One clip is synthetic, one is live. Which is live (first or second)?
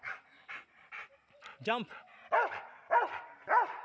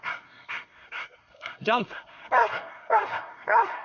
first